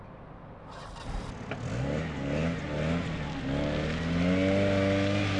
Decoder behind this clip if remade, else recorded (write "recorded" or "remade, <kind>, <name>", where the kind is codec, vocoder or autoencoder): recorded